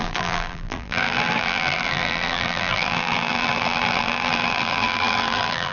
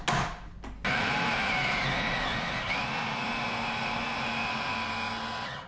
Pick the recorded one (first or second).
second